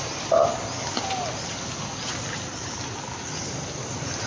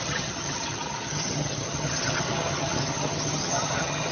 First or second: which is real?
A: first